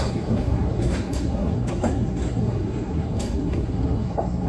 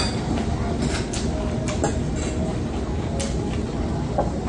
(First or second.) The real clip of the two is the second